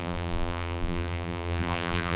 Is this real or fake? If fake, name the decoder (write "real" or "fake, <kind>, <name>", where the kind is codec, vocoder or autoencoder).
fake, vocoder, BigVGAN v2